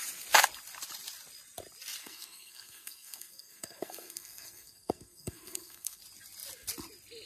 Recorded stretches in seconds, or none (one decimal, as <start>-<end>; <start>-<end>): 0.0-2.0; 6.0-7.3